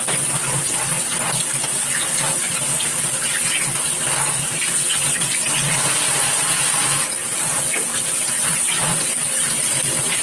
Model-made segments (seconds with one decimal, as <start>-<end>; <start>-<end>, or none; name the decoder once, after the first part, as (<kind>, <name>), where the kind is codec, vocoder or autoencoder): 7.2-8.3 (vocoder, BigVGAN v2)